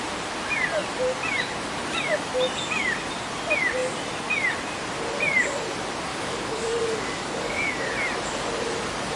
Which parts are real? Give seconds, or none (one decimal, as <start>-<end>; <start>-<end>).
0.0-6.1; 7.7-9.2